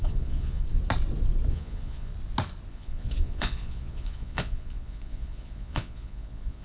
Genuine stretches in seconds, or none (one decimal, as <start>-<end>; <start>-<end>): 0.6-1.5; 2.1-2.7